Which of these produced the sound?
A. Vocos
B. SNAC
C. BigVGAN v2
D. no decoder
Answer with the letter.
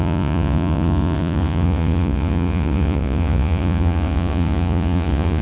A